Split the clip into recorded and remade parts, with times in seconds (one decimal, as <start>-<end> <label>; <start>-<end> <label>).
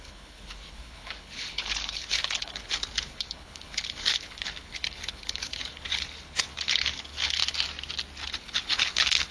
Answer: 0.0-7.4 remade; 7.4-8.2 recorded; 8.2-9.3 remade